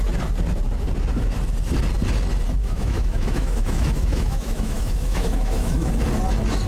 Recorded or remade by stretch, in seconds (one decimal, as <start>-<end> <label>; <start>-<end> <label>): 0.0-2.6 recorded; 2.6-5.9 remade; 5.9-6.7 recorded